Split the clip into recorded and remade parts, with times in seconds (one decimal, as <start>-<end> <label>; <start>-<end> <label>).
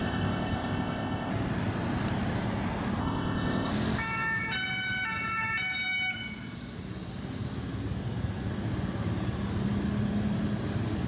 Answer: 0.0-1.3 remade; 1.3-3.0 recorded; 3.0-3.7 remade; 3.7-11.1 recorded